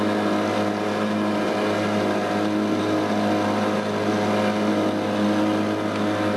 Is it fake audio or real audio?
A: real